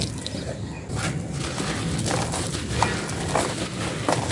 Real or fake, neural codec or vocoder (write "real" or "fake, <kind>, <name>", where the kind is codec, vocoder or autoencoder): real